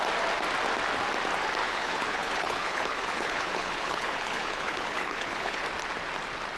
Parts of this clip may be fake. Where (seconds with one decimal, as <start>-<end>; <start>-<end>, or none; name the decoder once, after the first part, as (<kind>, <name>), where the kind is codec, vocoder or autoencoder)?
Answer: 1.6-5.6 (codec, HILCodec)